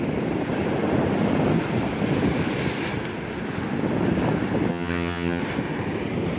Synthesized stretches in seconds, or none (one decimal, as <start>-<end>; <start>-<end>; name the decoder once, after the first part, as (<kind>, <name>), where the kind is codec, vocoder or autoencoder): 4.7-5.4 (vocoder, HiFi-GAN)